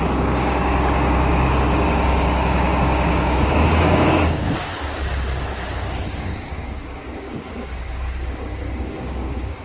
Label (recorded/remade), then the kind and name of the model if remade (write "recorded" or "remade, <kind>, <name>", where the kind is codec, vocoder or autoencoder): remade, codec, DAC